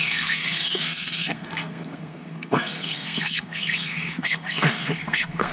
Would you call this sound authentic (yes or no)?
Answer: no